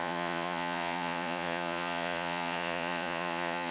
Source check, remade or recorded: remade